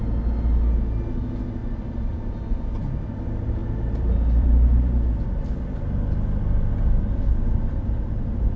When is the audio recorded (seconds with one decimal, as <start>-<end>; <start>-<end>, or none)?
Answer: 0.0-3.6; 5.1-8.6